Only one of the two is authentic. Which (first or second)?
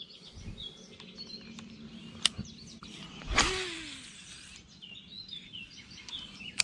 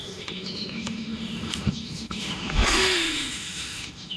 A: first